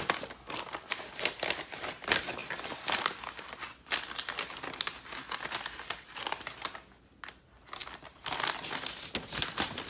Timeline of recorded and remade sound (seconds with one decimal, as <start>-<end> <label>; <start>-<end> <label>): 0.0-9.9 recorded